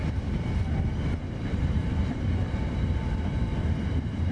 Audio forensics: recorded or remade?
remade